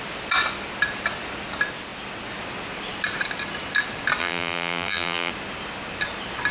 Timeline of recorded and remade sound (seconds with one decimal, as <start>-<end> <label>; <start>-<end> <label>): 0.0-4.2 recorded; 4.2-5.3 remade; 5.3-6.5 recorded